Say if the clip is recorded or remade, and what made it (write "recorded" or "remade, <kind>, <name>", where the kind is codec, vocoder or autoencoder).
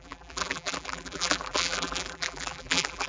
remade, vocoder, BigVGAN v2